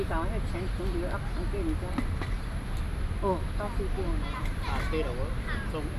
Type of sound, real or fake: real